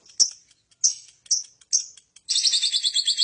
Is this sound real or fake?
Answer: real